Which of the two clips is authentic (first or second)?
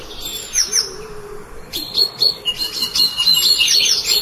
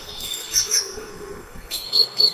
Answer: first